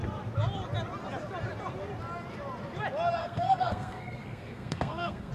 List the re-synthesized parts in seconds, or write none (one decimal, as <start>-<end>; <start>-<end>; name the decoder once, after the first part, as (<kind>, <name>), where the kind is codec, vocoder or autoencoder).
3.2-5.3 (codec, SNAC)